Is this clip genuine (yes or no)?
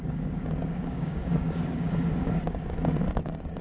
no